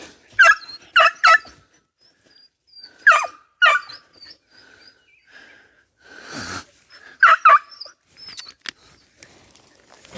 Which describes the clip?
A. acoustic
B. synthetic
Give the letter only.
A